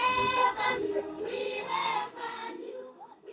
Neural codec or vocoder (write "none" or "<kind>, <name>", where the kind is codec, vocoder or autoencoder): codec, SNAC